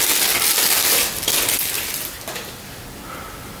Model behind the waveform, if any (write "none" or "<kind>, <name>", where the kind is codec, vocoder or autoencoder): none